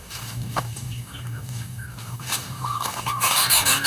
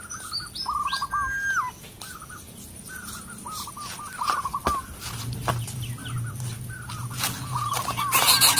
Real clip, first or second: second